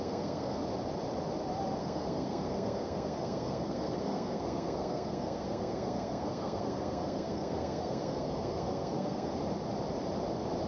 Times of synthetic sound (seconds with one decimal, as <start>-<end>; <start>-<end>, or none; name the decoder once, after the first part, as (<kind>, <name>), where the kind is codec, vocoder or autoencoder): 0.0-0.6 (codec, SNAC); 1.8-9.3